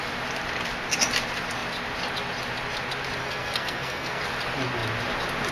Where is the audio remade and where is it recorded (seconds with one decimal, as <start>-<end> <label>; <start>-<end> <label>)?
0.0-3.2 recorded; 3.2-4.2 remade; 4.2-5.5 recorded